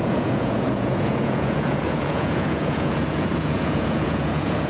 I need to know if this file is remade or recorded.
remade